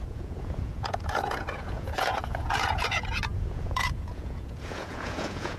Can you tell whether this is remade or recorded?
remade